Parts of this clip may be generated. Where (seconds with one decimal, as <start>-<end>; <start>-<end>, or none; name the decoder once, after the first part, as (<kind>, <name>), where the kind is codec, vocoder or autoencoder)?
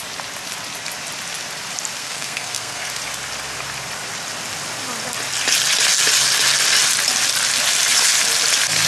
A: 2.0-2.9 (codec, SNAC)